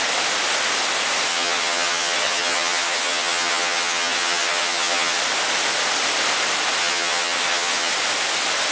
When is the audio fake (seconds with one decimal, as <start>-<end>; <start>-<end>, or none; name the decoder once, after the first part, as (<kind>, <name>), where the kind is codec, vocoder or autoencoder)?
1.3-5.2 (vocoder, HiFi-GAN); 6.8-7.9